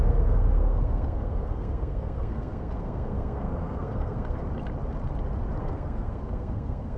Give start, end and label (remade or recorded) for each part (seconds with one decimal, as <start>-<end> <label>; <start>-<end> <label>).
0.0-4.4 remade; 4.4-5.6 recorded; 5.6-7.0 remade